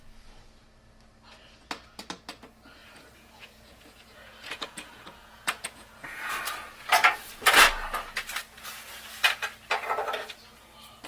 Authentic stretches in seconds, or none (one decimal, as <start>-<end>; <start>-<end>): 0.0-2.8; 6.3-11.1